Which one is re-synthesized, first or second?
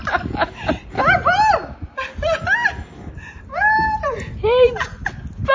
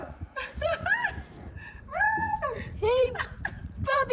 second